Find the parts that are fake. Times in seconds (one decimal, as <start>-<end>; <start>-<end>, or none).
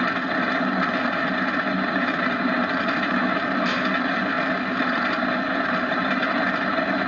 none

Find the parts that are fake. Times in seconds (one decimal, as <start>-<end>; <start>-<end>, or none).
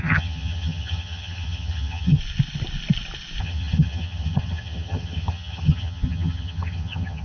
0.0-2.2; 3.4-7.2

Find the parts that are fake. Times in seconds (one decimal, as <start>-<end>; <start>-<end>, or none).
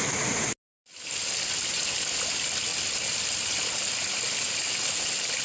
none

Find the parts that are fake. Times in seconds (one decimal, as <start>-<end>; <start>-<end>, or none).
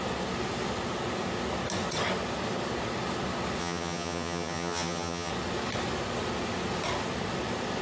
3.6-5.3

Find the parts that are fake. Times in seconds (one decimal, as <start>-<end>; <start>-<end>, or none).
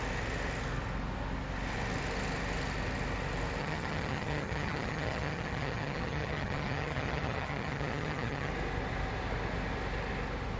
3.6-8.5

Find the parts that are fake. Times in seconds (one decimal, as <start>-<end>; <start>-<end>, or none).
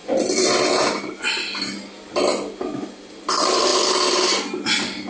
none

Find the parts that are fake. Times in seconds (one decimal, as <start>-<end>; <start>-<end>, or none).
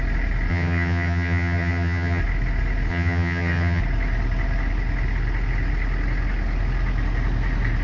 0.5-2.2; 2.9-3.8